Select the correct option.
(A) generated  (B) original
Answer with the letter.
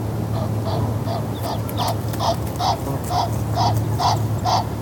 A